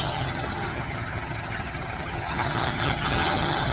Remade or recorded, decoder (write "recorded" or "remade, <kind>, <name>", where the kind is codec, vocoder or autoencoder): remade, vocoder, HiFi-GAN